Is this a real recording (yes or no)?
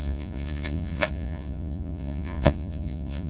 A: no